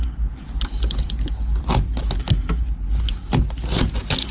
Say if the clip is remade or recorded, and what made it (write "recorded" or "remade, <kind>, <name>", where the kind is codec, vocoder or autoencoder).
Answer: recorded